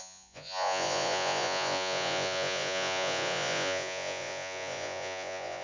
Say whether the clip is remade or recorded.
remade